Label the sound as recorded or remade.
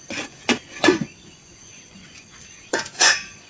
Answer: remade